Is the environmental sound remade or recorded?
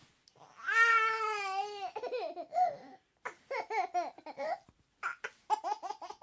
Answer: recorded